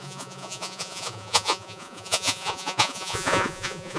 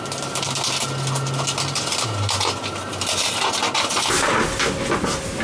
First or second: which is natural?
second